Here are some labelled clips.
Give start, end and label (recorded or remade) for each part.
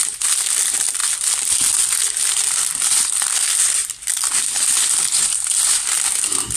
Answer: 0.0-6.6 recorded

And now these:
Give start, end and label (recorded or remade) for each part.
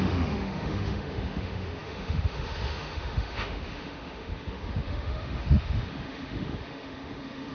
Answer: 0.0-7.5 remade